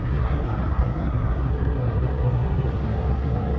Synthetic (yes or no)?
yes